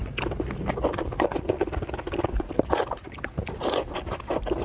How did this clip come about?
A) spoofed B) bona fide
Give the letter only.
B